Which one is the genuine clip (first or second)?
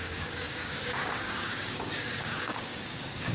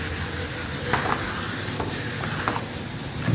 second